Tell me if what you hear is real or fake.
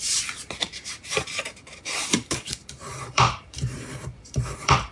fake